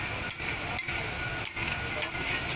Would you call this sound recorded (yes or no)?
yes